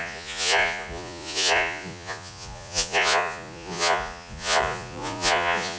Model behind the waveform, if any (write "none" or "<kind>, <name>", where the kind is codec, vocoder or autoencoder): vocoder, Vocos